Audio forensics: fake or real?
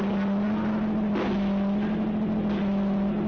real